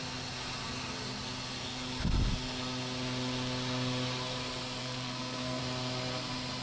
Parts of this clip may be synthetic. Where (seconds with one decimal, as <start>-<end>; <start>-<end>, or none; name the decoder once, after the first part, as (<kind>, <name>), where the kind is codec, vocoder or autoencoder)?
4.8-5.6 (codec, SNAC)